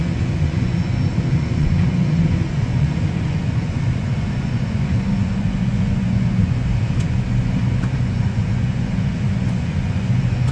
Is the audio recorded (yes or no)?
no